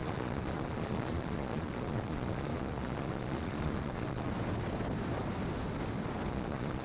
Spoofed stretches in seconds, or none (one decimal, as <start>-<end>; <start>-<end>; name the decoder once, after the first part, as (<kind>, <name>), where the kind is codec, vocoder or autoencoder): 0.0-4.3 (vocoder, Vocos); 6.3-6.8